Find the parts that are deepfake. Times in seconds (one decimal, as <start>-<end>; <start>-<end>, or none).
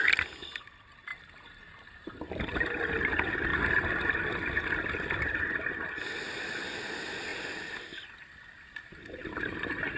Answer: none